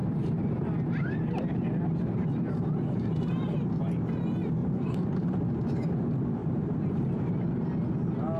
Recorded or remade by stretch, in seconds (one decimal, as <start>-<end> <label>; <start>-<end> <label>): 0.0-3.8 remade; 3.8-4.6 recorded; 4.6-5.3 remade; 5.3-6.4 recorded; 6.4-7.0 remade; 7.0-8.4 recorded